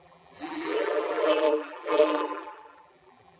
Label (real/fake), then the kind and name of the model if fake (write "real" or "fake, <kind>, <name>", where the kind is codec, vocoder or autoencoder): fake, vocoder, BigVGAN v2